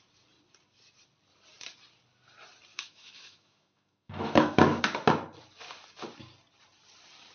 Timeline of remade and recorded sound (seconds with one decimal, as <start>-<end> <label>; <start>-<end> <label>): 0.0-2.7 recorded; 2.7-4.8 remade; 4.8-7.3 recorded